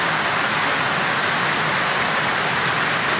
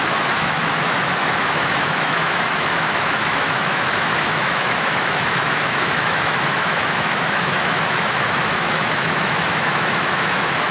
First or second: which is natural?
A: first